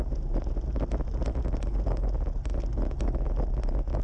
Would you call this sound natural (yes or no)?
yes